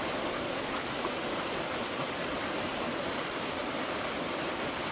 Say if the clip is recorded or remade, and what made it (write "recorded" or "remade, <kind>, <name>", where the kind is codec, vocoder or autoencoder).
recorded